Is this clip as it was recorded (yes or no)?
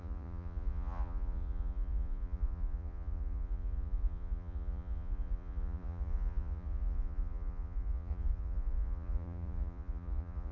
no